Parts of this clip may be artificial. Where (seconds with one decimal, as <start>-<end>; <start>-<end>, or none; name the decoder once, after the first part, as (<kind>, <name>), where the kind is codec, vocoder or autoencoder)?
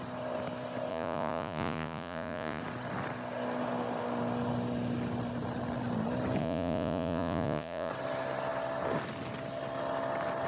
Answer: 0.9-2.6 (vocoder, Vocos); 6.4-7.9